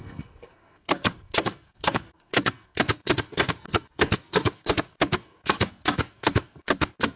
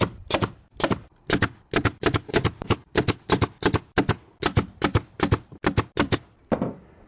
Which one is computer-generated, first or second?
first